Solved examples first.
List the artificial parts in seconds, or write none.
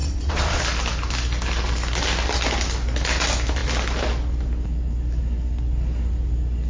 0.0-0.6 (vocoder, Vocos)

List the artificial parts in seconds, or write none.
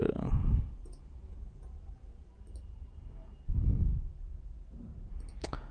0.0-2.3 (vocoder, Vocos); 3.9-5.1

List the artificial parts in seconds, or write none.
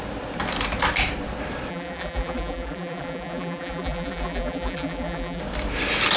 1.7-5.4 (vocoder, BigVGAN v2)